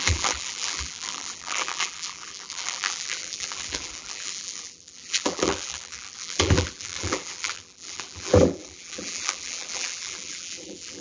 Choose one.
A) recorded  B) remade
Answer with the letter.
B